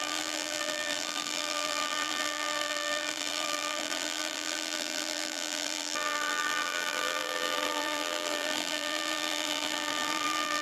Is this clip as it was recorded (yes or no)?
no